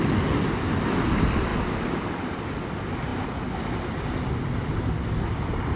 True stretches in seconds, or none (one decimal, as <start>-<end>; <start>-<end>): 0.0-5.8